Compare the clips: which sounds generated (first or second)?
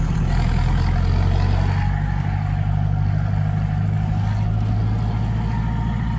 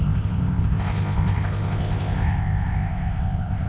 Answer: second